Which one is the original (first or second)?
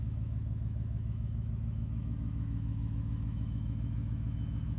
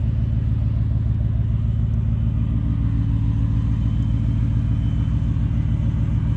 second